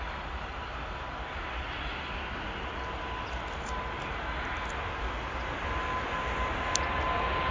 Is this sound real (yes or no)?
yes